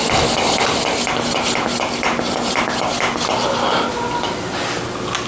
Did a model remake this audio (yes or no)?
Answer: no